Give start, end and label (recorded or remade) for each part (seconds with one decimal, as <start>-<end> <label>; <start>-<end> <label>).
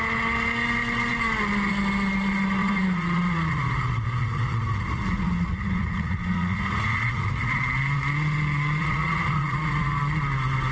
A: 0.0-2.6 recorded; 2.6-7.6 remade; 7.6-8.8 recorded; 8.8-10.0 remade; 10.0-10.7 recorded